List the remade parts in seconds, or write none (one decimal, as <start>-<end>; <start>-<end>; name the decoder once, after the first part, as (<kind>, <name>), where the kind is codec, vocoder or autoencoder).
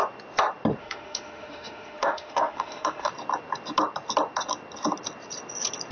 0.8-3.1 (autoencoder, DAC-VAE)